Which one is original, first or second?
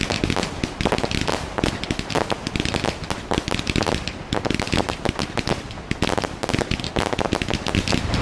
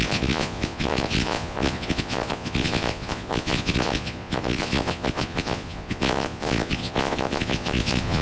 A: first